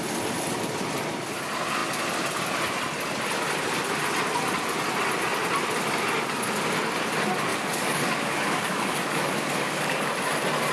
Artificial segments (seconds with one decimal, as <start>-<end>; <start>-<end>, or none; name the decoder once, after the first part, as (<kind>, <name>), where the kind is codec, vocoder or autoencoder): 7.5-10.1 (codec, DAC)